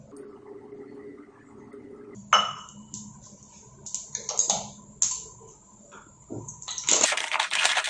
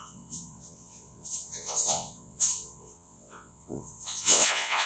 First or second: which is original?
first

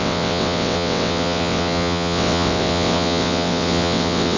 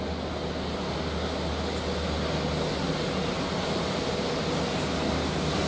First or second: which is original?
second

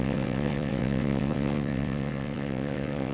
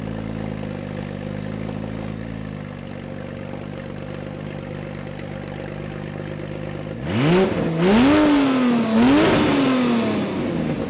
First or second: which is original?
second